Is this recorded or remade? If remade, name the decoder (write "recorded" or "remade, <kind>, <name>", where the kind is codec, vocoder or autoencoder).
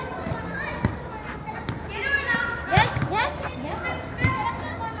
recorded